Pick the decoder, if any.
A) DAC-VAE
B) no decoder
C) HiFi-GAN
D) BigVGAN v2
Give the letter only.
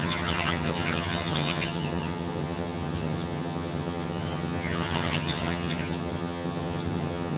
C